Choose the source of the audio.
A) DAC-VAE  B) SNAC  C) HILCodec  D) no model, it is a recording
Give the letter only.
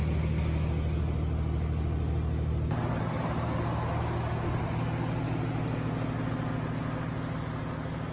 D